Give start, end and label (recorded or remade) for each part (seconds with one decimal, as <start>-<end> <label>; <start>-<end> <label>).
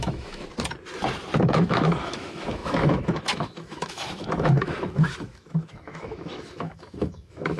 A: 0.0-0.4 remade; 0.4-1.4 recorded; 1.4-7.6 remade